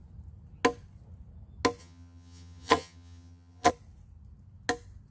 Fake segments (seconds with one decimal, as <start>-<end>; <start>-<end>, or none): 1.8-3.7

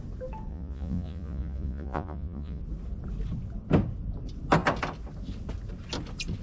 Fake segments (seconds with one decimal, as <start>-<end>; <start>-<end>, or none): 0.5-2.6